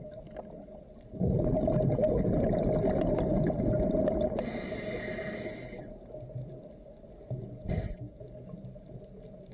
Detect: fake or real real